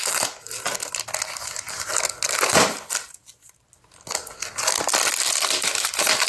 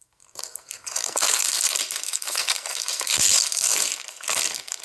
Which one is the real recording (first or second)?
first